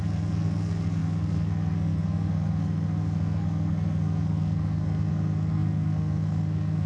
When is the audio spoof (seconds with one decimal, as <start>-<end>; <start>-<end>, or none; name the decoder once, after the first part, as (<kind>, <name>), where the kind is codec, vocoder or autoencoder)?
0.0-6.9 (codec, SNAC)